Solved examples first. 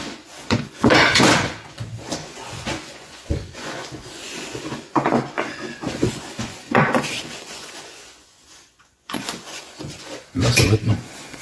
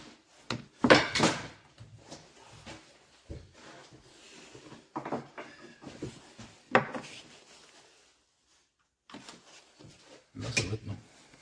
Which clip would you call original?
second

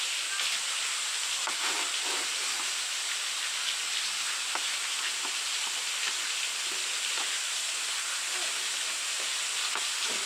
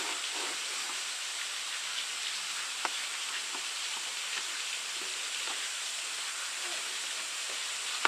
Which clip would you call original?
first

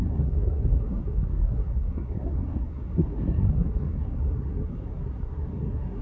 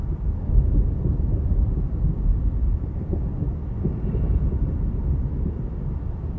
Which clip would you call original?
second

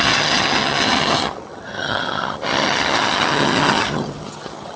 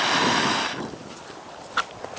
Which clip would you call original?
second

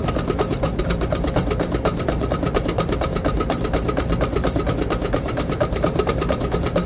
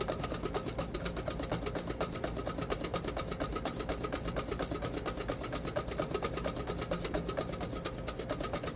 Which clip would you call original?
second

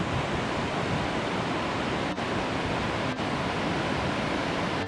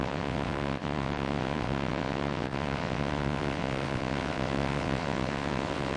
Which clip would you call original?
first